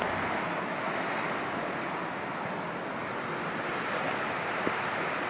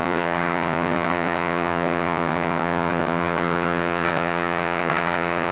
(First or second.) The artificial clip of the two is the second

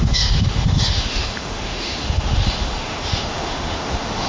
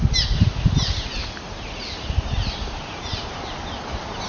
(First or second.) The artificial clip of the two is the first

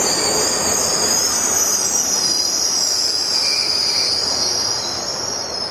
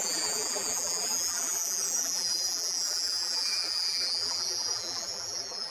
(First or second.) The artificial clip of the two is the second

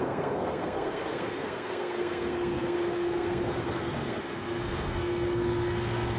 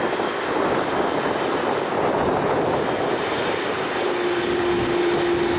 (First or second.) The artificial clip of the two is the first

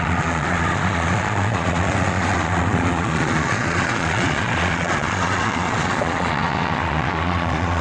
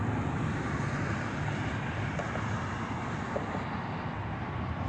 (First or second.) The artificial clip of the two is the first